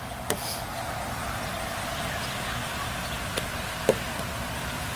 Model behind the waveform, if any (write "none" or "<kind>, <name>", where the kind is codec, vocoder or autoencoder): none